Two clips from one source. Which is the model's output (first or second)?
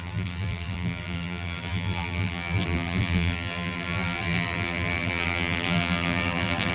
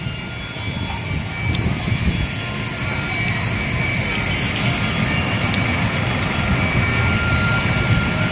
first